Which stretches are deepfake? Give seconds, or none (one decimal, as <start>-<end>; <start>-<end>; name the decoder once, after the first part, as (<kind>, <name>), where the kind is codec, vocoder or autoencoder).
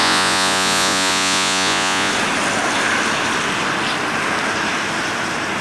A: 0.0-2.1 (vocoder, Vocos)